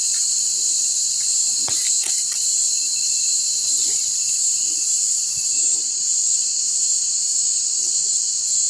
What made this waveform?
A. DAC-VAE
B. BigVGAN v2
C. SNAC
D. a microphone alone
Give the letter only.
B